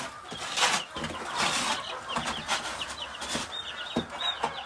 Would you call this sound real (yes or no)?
yes